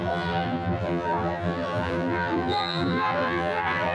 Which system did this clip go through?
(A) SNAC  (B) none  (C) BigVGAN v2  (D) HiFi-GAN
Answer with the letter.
C